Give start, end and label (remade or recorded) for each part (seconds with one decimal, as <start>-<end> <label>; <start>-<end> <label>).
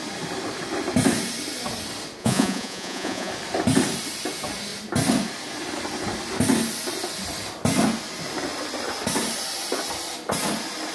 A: 0.0-2.2 recorded; 2.2-3.3 remade; 3.3-10.9 recorded